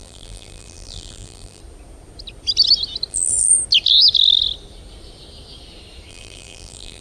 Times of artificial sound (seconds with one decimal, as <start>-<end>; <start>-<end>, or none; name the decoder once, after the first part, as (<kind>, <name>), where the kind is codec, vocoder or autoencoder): 0.0-1.6 (vocoder, BigVGAN v2); 3.1-3.5; 6.1-7.0